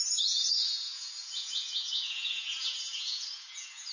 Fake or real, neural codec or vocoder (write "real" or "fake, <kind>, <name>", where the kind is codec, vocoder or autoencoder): fake, vocoder, Vocos